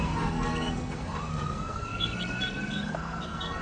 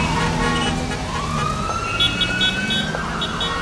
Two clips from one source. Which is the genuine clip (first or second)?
second